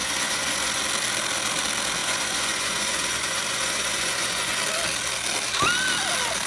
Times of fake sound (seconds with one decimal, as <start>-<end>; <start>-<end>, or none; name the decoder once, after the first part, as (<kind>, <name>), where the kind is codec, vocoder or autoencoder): 0.0-0.8 (vocoder, Vocos); 2.0-4.6